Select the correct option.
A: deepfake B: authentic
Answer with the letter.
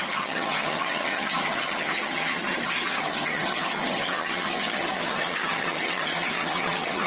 A